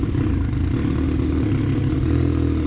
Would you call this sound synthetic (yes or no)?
no